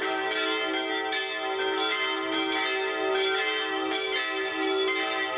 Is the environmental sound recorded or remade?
recorded